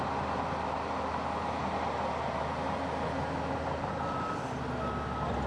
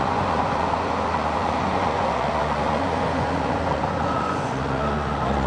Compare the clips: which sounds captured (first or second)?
first